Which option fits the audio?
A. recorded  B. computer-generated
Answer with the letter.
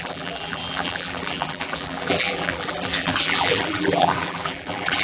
B